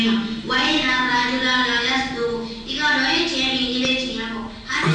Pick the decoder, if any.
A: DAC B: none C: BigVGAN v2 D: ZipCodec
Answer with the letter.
B